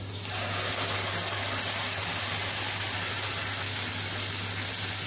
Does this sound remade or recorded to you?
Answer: recorded